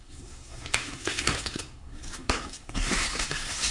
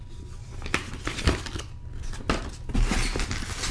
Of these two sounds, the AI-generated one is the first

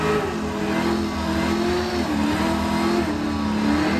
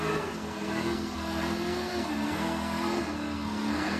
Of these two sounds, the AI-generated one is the second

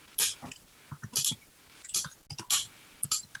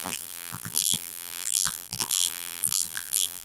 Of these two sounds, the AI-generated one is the second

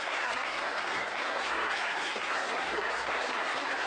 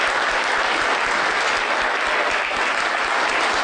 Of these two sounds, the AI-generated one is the first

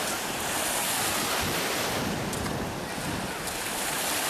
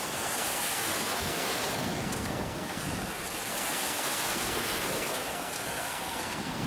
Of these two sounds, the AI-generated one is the second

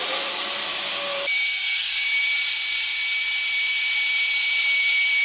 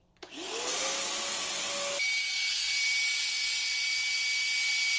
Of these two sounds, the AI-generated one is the first